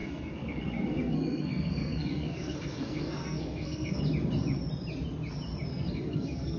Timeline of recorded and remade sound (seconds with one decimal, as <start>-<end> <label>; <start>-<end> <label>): 0.0-4.0 remade; 4.0-5.7 recorded; 5.7-6.6 remade